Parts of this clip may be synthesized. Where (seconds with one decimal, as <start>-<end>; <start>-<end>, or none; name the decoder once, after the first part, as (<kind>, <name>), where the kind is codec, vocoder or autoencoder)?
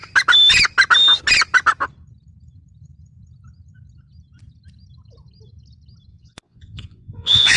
6.1-7.6 (vocoder, Vocos)